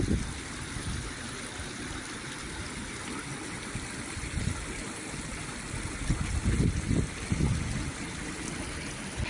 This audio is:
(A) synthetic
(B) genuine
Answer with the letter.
B